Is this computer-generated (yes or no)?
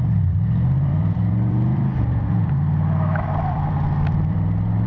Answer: yes